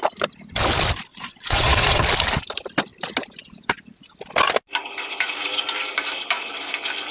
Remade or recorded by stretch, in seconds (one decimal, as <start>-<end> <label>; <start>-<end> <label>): 0.0-1.1 recorded; 1.1-2.0 remade; 2.0-7.1 recorded